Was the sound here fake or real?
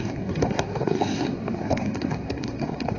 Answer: fake